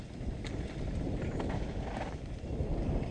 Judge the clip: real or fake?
real